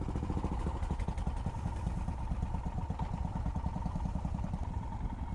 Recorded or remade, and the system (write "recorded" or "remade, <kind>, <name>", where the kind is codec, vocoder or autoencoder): recorded